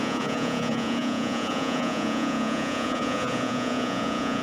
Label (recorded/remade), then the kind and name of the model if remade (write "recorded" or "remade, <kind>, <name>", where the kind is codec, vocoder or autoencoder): remade, vocoder, Vocos